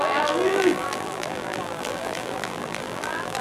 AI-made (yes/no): yes